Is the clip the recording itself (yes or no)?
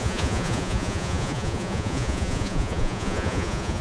no